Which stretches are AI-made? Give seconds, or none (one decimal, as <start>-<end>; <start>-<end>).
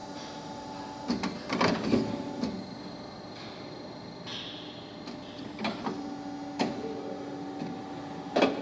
none